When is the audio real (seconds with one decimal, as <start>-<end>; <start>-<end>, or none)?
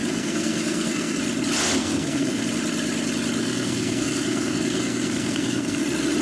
1.2-1.8; 2.4-3.4; 5.8-6.2